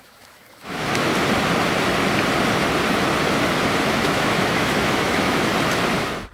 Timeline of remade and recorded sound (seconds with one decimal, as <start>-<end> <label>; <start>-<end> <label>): 0.0-1.1 remade; 1.1-3.8 recorded; 3.8-5.5 remade; 5.5-6.3 recorded